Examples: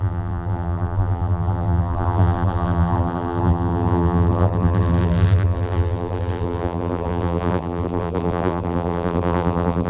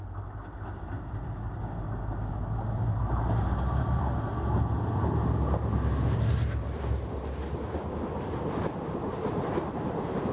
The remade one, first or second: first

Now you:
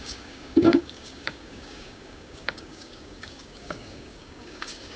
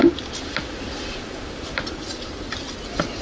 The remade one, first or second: first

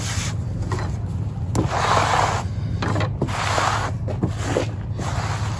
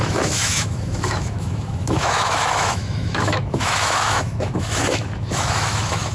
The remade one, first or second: second